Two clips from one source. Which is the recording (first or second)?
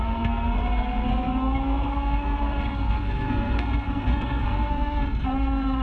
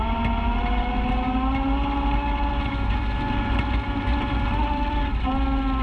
second